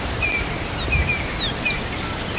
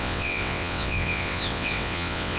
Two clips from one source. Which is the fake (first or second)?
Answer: second